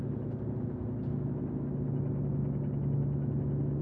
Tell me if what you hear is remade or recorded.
recorded